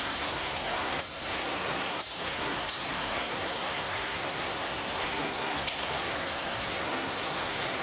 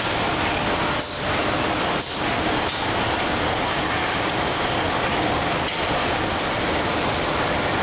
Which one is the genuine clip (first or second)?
second